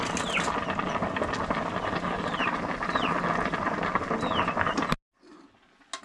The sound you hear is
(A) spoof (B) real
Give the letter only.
B